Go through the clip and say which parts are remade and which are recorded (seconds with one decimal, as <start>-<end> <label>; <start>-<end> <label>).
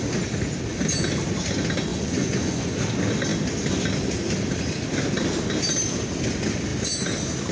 0.0-1.9 recorded; 1.9-2.8 remade; 2.8-7.5 recorded